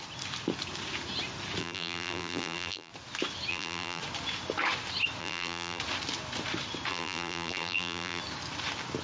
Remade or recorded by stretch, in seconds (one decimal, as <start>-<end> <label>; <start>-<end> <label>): 0.0-1.6 recorded; 1.6-2.9 remade; 2.9-3.5 recorded; 3.5-4.0 remade; 4.0-5.2 recorded; 5.2-5.8 remade; 5.8-6.9 recorded; 6.9-8.2 remade; 8.2-9.0 recorded